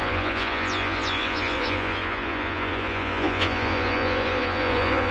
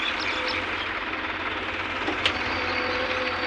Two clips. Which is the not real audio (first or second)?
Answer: first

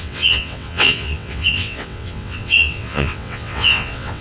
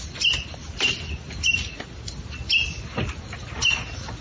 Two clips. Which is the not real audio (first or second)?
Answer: first